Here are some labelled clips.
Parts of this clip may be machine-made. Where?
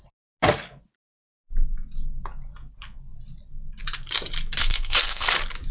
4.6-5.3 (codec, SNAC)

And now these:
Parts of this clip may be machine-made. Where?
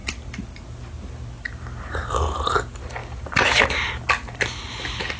none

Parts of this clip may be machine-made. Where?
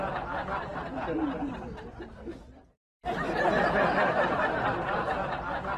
none